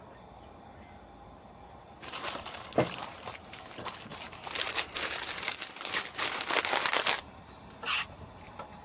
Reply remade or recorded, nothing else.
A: remade